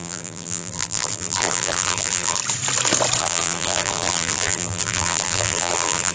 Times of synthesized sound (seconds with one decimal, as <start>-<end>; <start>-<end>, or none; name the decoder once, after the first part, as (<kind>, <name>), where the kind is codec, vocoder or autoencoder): 0.0-2.4 (vocoder, BigVGAN v2); 3.2-6.1